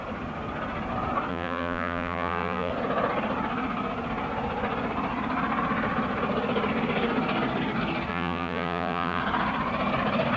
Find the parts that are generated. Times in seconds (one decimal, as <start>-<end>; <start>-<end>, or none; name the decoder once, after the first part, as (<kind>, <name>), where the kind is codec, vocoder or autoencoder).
1.3-2.7 (vocoder, BigVGAN v2); 8.1-9.2